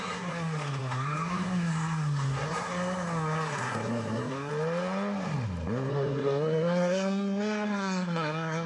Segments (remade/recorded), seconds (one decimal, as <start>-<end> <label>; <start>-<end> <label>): 0.0-4.5 remade; 4.5-5.9 recorded; 5.9-8.7 remade